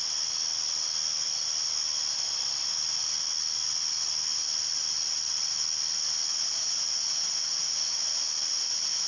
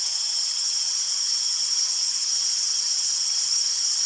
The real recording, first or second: first